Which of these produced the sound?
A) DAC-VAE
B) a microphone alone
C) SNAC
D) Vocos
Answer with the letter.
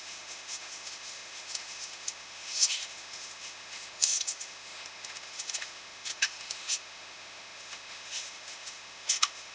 A